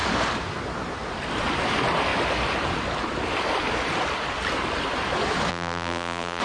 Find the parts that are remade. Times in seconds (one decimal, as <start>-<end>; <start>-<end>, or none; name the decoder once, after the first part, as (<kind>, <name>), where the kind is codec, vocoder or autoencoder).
5.5-6.4 (vocoder, BigVGAN v2)